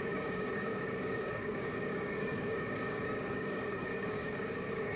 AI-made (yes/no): yes